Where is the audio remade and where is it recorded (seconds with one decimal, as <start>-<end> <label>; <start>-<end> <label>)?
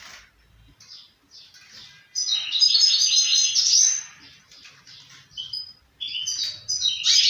0.0-3.3 recorded; 3.3-3.8 remade; 3.8-7.3 recorded